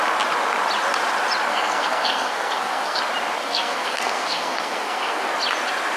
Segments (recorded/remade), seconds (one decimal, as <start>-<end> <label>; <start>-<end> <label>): 0.0-1.5 recorded; 1.5-3.0 remade; 3.0-3.4 recorded; 3.4-5.3 remade; 5.3-6.0 recorded